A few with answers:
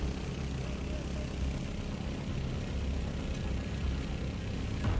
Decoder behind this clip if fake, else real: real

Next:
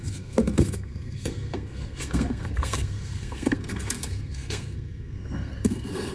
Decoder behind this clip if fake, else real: fake, codec, SNAC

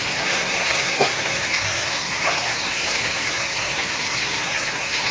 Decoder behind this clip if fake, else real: fake, codec, SNAC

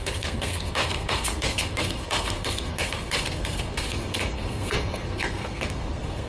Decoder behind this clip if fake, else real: fake, codec, SNAC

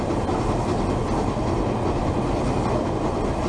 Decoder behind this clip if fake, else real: real